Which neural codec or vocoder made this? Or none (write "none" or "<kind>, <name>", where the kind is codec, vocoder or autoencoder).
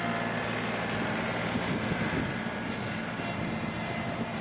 none